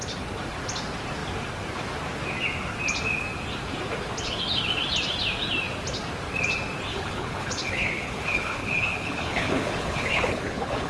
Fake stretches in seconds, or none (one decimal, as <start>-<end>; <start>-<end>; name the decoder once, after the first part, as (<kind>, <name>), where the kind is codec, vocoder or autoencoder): 6.9-10.9 (codec, HILCodec)